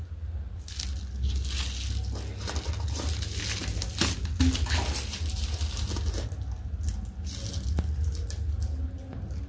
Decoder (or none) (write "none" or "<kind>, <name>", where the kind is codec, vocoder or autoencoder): none